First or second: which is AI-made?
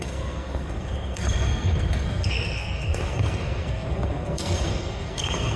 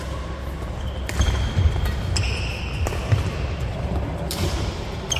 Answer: first